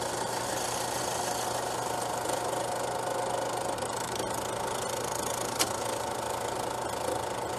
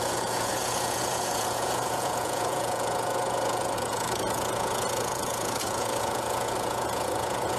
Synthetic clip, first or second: second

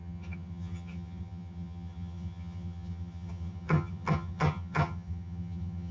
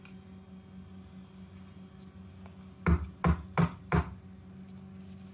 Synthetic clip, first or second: first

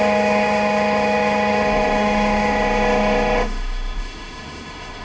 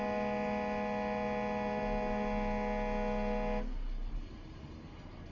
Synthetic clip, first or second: first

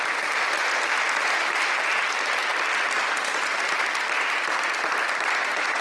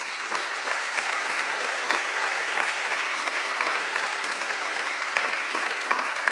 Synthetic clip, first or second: second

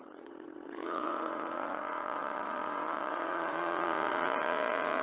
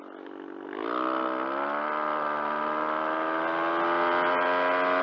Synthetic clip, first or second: first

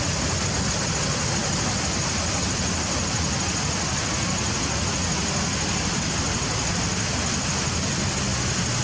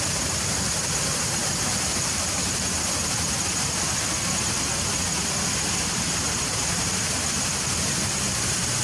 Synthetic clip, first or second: second